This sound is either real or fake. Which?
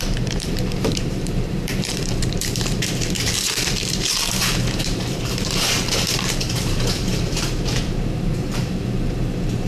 fake